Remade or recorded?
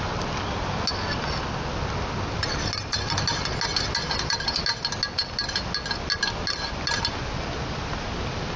recorded